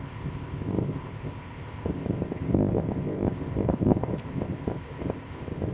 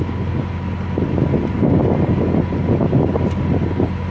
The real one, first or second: second